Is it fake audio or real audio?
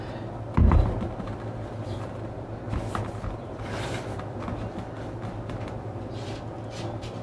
real